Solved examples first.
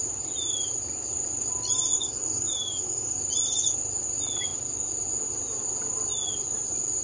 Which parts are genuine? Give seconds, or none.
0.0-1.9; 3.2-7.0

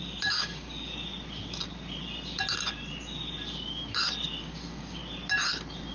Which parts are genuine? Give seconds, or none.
0.9-4.4; 5.0-5.9

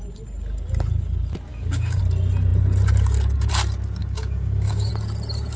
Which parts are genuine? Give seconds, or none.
0.0-1.5; 2.0-4.0; 4.9-5.6

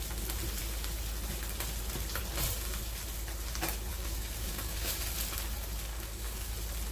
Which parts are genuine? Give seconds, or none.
0.0-3.9; 4.9-5.9; 6.5-6.9

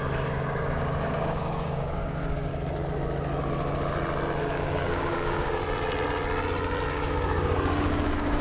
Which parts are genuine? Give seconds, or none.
2.5-4.4; 5.6-6.9